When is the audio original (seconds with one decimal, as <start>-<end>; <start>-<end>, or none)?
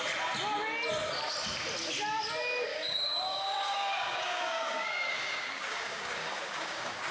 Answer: 0.0-2.7